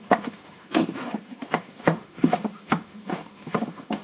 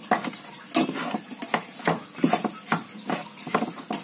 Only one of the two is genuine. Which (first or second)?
second